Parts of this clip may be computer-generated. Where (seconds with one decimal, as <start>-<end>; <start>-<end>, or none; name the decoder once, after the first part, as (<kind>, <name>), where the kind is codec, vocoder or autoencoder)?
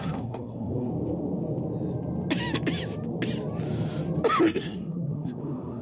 0.0-0.9 (codec, SNAC); 4.4-5.8